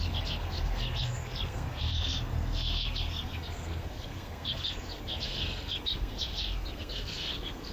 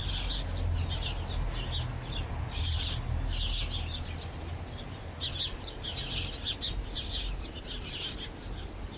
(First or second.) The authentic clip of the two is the second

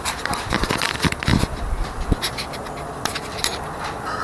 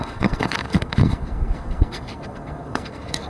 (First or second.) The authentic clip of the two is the first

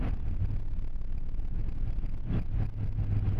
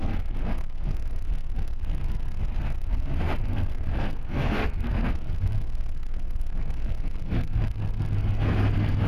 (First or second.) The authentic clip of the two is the first